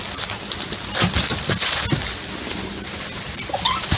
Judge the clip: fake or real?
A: real